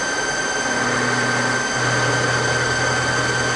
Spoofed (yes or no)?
no